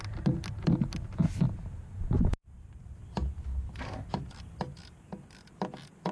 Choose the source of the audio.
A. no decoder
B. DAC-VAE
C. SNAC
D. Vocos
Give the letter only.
A